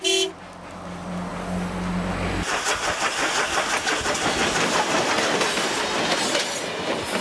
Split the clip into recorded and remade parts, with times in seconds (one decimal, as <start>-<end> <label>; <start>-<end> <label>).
0.0-7.2 recorded